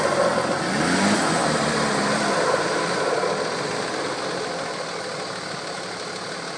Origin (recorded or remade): recorded